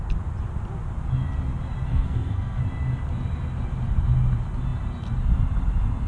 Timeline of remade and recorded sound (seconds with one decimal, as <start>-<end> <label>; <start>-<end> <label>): 0.0-1.9 recorded; 1.9-2.6 remade; 2.6-6.1 recorded